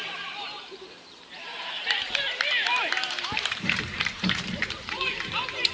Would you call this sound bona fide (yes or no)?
no